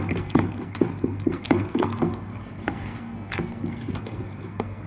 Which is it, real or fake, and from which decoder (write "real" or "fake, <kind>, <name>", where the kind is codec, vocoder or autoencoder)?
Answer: fake, codec, SNAC